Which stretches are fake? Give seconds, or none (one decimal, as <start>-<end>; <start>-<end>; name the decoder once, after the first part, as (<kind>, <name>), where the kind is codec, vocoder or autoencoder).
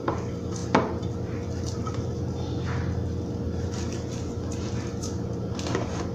none